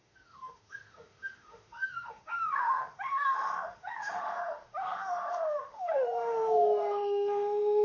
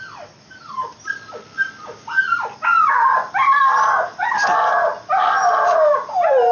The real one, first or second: second